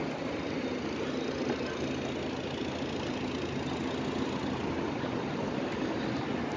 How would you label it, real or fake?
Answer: real